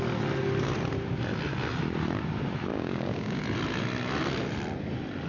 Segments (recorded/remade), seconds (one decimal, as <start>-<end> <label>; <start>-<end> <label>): 0.0-2.7 recorded; 2.7-3.4 remade; 3.4-5.3 recorded